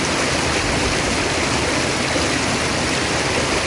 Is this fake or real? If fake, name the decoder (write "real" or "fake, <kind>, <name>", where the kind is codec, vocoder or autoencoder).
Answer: real